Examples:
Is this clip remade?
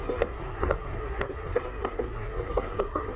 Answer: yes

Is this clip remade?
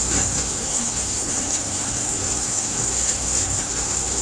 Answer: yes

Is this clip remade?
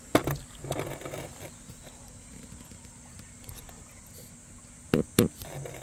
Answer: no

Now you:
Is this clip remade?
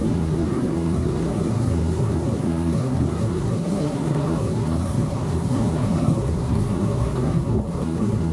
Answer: yes